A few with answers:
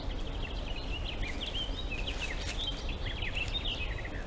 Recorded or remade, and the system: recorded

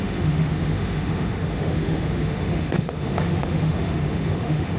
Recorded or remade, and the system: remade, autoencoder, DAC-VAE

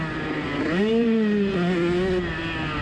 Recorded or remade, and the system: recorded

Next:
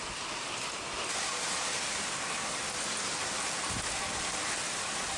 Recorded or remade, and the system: recorded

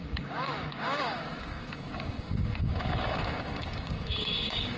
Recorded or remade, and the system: remade, codec, DAC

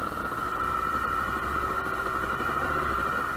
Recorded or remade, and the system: remade, vocoder, BigVGAN v2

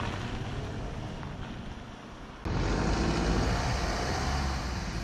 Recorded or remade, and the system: recorded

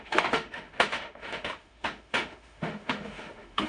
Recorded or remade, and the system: remade, autoencoder, DAC-VAE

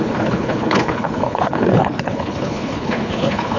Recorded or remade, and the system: remade, codec, HILCodec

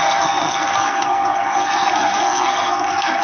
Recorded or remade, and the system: remade, codec, SNAC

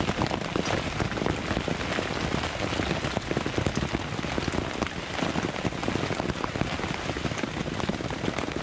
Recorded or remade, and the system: recorded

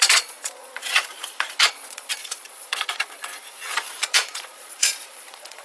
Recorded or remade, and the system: remade, vocoder, Vocos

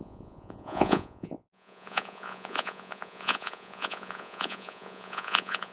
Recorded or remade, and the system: remade, vocoder, Vocos